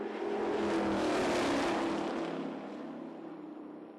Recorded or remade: recorded